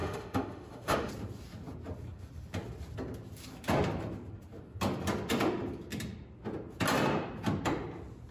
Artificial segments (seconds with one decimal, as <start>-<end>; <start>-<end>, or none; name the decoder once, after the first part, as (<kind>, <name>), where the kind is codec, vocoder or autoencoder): 0.0-1.1 (autoencoder, DAC-VAE)